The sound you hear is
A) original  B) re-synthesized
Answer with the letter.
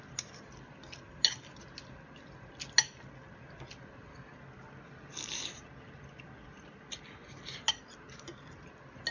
A